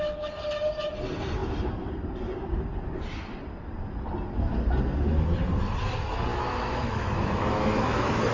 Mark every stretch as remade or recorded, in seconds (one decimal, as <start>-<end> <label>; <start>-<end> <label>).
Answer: 0.0-6.3 recorded; 6.3-8.3 remade